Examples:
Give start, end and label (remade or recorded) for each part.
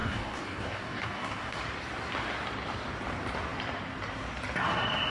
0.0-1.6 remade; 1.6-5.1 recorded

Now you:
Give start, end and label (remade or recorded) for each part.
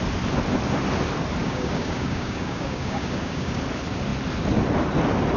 0.0-1.4 recorded; 1.4-3.6 remade; 3.6-5.4 recorded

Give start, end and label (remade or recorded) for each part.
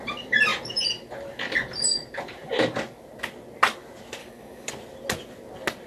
0.0-4.2 recorded; 4.2-4.7 remade; 4.7-5.9 recorded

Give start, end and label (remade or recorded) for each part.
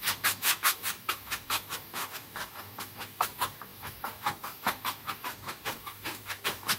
0.0-6.8 remade